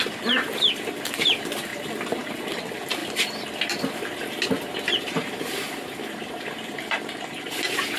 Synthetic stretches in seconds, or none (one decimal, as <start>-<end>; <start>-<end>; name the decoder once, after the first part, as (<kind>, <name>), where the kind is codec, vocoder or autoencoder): 0.0-1.7 (vocoder, BigVGAN v2); 2.4-8.0